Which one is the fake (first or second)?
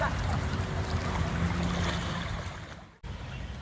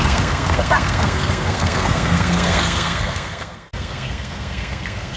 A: second